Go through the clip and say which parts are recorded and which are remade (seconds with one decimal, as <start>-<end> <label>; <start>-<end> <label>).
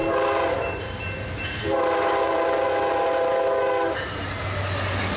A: 0.0-2.7 remade; 2.7-3.6 recorded; 3.6-4.4 remade; 4.4-5.2 recorded